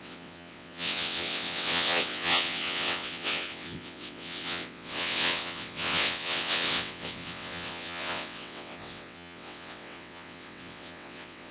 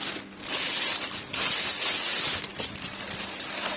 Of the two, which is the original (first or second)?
second